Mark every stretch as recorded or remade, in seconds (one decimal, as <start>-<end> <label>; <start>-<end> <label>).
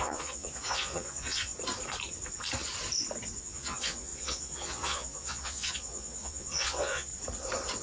0.0-1.5 remade; 1.5-3.4 recorded; 3.4-7.1 remade; 7.1-7.8 recorded